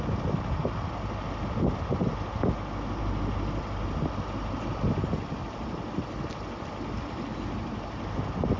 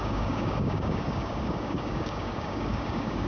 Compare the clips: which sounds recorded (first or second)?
first